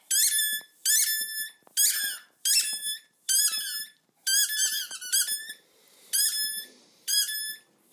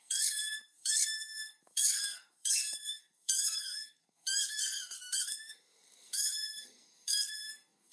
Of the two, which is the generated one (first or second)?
second